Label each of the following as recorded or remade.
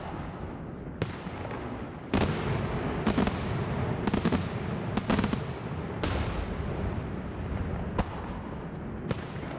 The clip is recorded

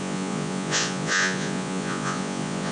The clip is remade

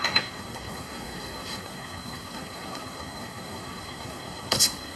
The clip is remade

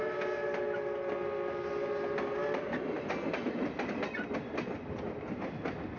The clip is recorded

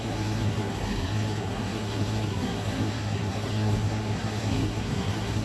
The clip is remade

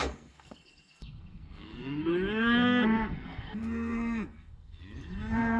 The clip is remade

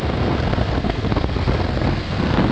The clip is remade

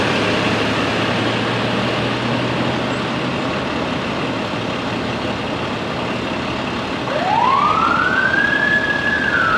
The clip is recorded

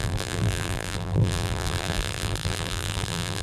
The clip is remade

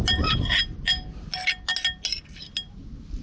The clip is recorded